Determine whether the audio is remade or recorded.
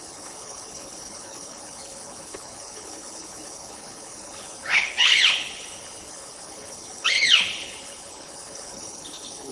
remade